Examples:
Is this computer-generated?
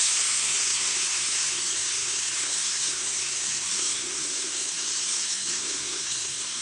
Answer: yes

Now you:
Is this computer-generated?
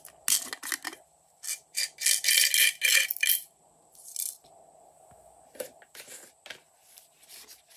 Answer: no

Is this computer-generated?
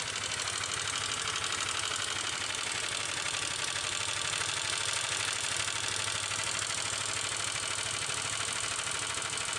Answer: no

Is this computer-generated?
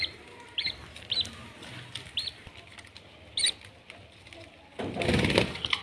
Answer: no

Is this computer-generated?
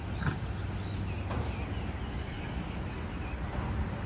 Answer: no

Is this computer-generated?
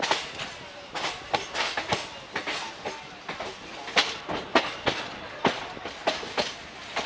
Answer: no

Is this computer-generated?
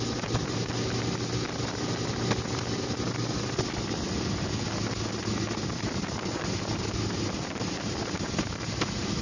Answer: no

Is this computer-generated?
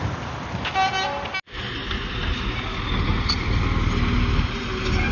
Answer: no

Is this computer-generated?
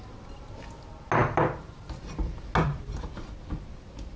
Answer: no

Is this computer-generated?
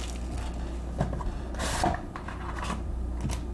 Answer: no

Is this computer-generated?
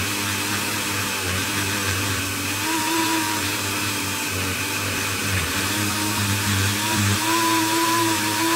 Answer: yes